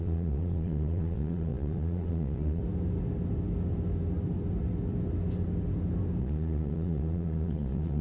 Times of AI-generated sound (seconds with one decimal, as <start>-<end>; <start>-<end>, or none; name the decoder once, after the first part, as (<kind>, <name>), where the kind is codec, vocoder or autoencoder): 0.0-2.6 (vocoder, Vocos); 6.2-8.0